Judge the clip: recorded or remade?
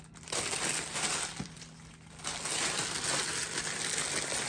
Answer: recorded